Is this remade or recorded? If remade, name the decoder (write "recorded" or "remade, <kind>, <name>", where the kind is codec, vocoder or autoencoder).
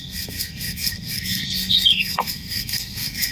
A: remade, codec, SNAC